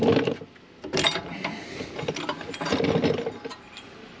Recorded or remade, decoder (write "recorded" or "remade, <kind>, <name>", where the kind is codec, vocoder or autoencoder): recorded